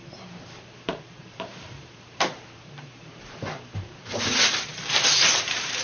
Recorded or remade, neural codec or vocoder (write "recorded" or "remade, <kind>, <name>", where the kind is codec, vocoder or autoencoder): remade, vocoder, BigVGAN v2